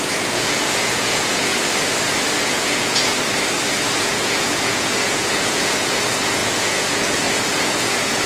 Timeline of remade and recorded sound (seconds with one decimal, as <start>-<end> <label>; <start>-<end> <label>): 0.0-1.5 remade; 1.5-2.4 recorded; 2.4-3.1 remade; 3.1-3.7 recorded; 3.7-8.3 remade